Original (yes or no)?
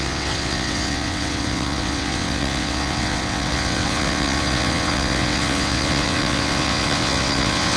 no